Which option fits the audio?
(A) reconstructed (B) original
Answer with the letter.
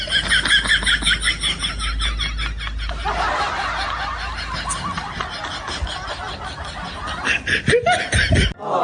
B